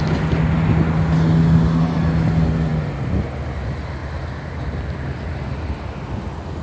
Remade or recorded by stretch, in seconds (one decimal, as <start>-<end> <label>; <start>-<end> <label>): 0.0-6.6 recorded